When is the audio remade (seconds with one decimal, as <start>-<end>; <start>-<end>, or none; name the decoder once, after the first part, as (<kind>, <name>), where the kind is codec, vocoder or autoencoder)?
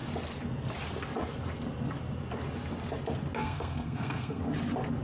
3.4-4.4 (codec, SNAC)